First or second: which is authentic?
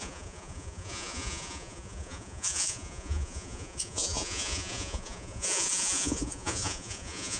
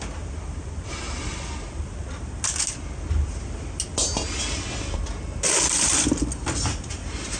second